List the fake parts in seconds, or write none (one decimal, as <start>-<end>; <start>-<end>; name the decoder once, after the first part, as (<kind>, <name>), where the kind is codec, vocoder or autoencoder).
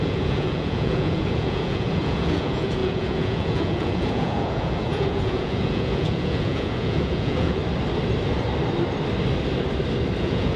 0.0-7.6 (vocoder, Vocos); 10.2-10.6